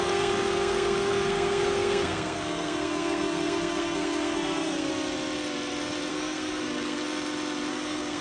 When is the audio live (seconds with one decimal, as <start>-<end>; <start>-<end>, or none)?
4.9-6.1; 7.0-7.7

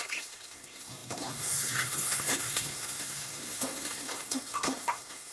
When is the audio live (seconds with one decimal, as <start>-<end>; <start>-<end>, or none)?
none

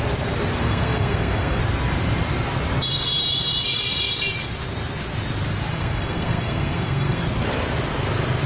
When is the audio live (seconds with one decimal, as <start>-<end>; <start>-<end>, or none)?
0.0-0.6; 1.6-5.7; 7.2-8.5

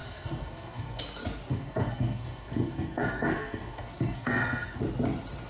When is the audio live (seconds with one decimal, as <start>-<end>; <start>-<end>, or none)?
1.0-1.5; 4.8-5.5

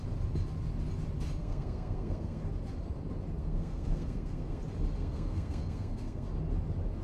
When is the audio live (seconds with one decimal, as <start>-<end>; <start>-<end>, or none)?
0.0-1.4; 2.5-3.4; 4.6-5.0; 6.3-7.0

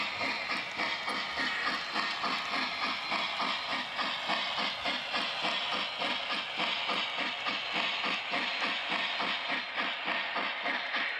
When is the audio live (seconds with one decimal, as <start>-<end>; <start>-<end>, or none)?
0.0-11.2

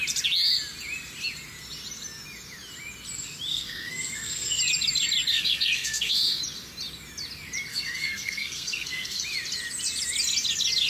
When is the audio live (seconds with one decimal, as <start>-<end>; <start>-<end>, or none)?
0.0-3.5; 4.6-5.3; 6.4-7.7; 9.2-10.9

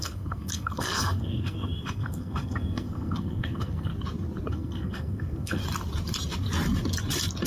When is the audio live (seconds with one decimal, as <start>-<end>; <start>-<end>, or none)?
3.9-4.5; 5.6-7.5